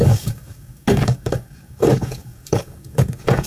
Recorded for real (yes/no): no